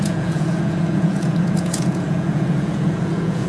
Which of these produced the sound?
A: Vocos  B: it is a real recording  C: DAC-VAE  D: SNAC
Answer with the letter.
A